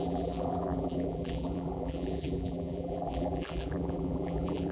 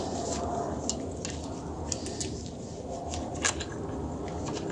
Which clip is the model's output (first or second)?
first